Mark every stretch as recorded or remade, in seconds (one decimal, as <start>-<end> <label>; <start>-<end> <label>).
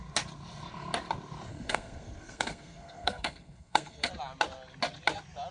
0.0-1.5 recorded; 1.5-4.1 remade; 4.1-5.5 recorded